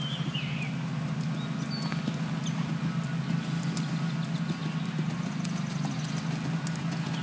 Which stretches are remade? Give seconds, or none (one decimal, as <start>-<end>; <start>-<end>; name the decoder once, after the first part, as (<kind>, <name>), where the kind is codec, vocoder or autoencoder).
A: none

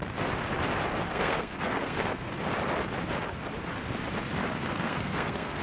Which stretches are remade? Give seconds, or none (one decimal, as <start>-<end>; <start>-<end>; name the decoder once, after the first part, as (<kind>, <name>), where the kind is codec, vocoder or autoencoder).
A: 1.1-2.4 (codec, SNAC); 4.4-5.6